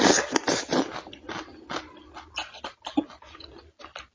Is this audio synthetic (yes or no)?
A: no